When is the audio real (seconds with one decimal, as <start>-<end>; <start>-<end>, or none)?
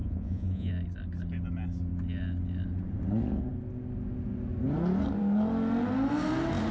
0.7-6.7